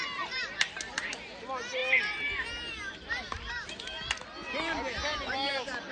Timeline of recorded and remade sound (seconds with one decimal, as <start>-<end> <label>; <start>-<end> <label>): 0.0-5.9 recorded